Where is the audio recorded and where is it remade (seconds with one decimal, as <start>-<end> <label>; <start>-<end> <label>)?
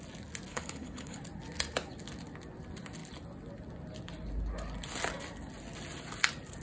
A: 0.0-0.5 recorded; 0.5-1.2 remade; 1.2-6.6 recorded